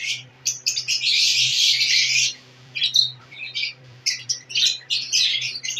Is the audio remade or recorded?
remade